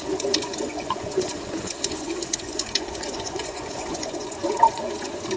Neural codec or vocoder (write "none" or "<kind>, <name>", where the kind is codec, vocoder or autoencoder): vocoder, Vocos